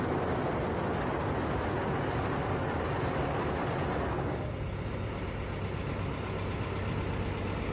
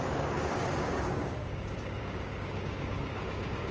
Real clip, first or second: first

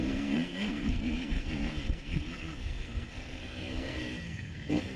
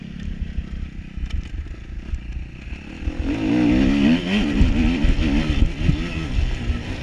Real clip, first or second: second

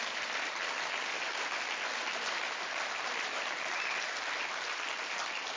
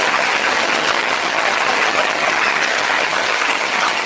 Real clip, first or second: first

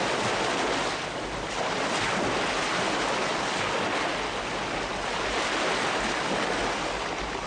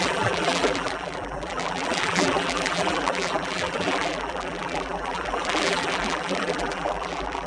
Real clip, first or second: first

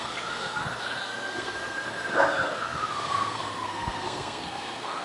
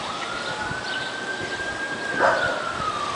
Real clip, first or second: second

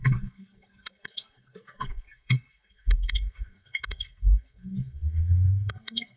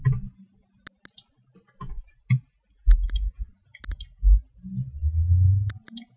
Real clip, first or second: second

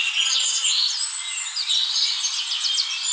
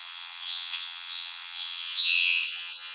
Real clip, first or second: first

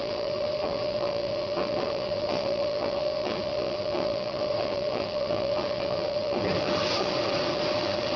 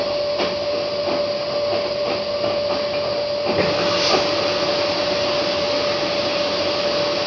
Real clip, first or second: second